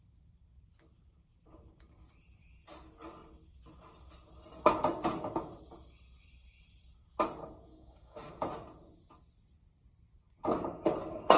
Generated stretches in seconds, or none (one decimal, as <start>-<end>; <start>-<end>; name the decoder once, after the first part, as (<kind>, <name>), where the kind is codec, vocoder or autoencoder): 7.7-8.3 (autoencoder, DAC-VAE)